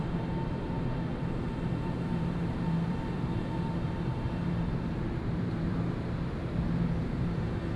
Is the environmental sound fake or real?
fake